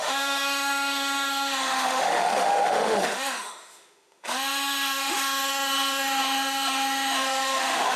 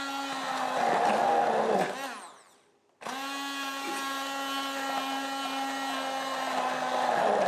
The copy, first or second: first